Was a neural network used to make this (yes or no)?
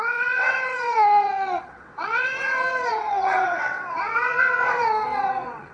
yes